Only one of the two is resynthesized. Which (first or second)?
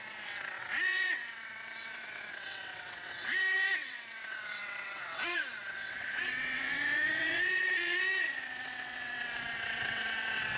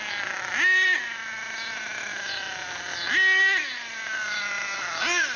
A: first